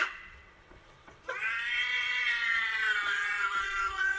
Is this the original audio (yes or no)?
no